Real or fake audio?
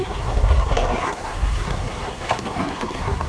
fake